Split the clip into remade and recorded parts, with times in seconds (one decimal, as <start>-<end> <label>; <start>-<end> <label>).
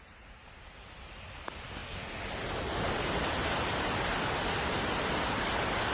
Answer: 0.0-5.9 recorded